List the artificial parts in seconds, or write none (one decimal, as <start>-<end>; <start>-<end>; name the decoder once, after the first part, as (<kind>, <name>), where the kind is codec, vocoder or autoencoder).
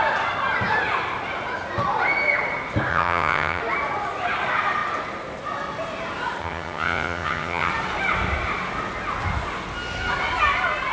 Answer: 2.9-3.6 (vocoder, HiFi-GAN); 6.4-7.7